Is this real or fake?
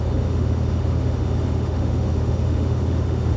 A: fake